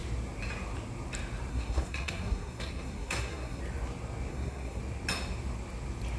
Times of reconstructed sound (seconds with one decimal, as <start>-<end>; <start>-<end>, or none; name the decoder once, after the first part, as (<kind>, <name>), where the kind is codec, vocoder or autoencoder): 1.5-3.6 (codec, SNAC); 4.3-4.8